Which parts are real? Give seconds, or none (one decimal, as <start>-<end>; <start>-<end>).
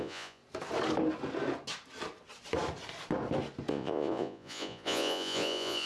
0.4-3.7